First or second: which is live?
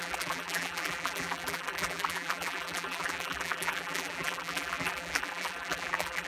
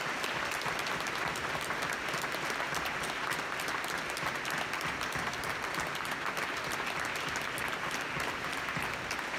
second